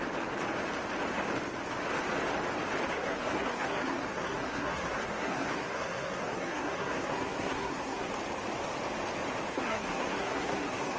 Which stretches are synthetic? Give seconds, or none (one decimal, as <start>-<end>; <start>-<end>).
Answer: 2.9-8.1; 9.5-11.0